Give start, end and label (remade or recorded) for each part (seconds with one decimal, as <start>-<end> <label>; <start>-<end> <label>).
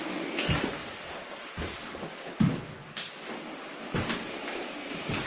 0.0-0.8 recorded; 0.8-1.5 remade; 1.5-2.8 recorded; 2.8-4.5 remade; 4.5-5.3 recorded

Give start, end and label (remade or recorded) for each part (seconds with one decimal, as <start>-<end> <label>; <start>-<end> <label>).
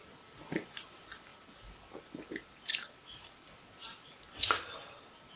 0.0-5.4 recorded